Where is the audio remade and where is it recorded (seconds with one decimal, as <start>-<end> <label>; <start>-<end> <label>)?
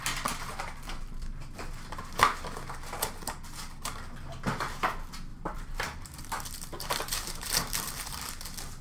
0.0-5.3 recorded; 5.3-6.2 remade; 6.2-6.7 recorded; 6.7-8.3 remade; 8.3-8.8 recorded